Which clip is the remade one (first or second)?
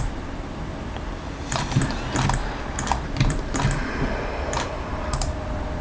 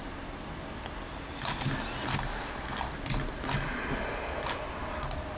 first